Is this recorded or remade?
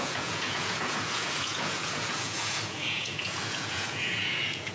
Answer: remade